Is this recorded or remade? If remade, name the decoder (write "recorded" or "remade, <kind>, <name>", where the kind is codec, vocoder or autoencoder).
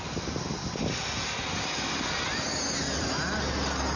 recorded